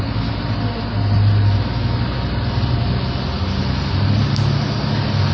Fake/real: real